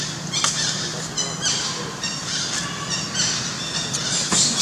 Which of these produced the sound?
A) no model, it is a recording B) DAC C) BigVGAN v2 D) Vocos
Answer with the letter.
A